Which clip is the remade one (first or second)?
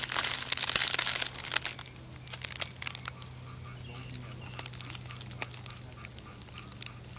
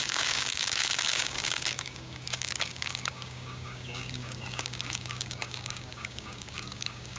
second